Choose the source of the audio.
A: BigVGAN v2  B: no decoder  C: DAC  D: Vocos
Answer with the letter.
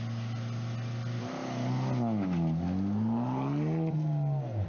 B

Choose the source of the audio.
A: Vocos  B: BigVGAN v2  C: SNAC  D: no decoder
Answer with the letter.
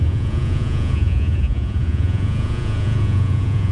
A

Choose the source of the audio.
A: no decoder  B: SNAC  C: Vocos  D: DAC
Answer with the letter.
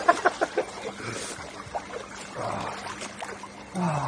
A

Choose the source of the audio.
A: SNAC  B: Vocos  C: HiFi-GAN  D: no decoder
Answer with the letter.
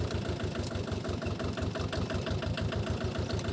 D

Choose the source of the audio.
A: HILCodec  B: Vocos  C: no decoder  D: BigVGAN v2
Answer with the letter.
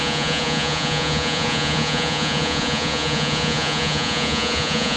B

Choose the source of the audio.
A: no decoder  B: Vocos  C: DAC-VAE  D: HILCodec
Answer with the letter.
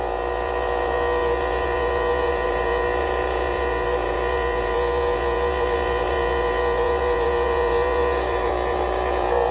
B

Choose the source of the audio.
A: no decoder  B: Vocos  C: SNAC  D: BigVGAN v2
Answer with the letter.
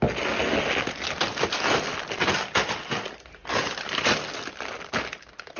A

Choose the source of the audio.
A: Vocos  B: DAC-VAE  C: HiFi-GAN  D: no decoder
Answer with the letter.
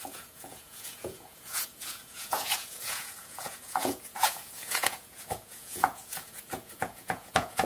A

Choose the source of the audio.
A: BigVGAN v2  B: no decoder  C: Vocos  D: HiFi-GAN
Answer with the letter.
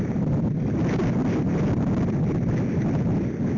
B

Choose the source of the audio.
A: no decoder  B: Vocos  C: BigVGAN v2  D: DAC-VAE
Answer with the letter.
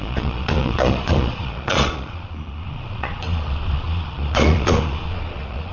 B